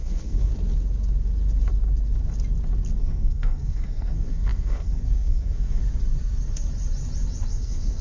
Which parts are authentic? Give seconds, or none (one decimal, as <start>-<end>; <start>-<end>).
0.5-3.0; 5.8-7.5

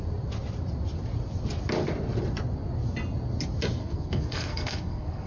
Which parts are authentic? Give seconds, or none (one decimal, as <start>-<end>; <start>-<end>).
0.0-3.8

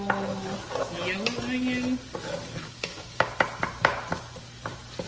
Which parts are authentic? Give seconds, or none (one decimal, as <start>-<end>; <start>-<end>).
0.0-2.6; 3.3-5.1

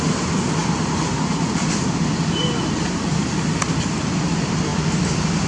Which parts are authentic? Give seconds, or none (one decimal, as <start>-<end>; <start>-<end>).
0.0-5.5

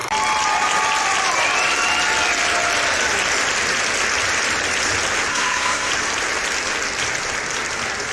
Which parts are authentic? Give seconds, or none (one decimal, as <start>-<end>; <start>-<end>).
0.0-5.3; 5.9-8.1

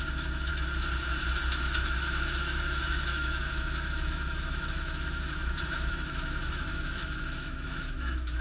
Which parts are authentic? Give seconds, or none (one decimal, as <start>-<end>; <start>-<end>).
0.5-1.6